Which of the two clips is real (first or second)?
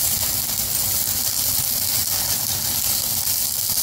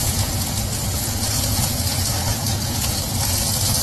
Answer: first